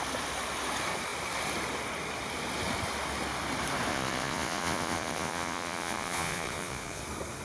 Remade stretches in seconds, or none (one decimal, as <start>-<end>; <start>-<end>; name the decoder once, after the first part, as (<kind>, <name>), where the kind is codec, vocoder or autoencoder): 3.9-7.0 (vocoder, Vocos)